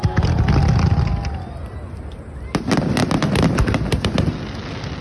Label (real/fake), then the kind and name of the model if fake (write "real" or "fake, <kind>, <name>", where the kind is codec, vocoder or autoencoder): real